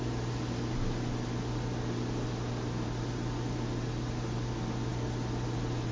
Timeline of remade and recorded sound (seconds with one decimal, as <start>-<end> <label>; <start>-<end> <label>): 0.0-5.9 recorded